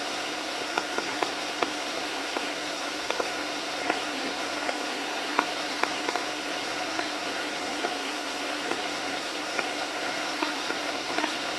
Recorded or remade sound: remade